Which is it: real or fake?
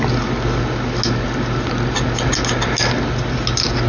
real